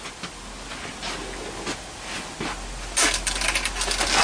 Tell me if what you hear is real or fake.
real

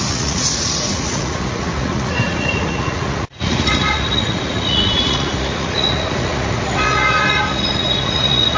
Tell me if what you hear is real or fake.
fake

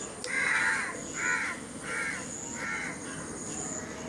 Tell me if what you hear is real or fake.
real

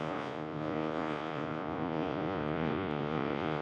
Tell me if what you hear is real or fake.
fake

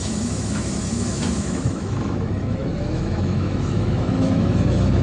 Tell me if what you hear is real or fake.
fake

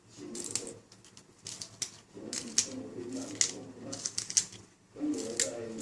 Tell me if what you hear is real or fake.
real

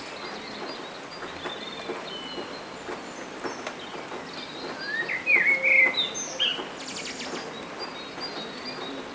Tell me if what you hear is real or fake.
real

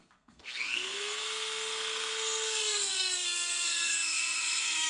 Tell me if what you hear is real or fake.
fake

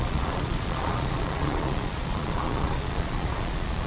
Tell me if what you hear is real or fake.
fake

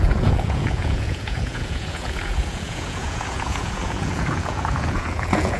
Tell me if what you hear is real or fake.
fake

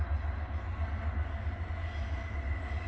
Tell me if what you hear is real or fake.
real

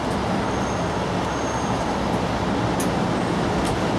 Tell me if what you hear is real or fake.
real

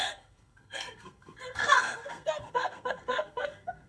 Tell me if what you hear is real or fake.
fake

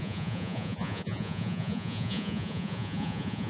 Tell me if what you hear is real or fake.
fake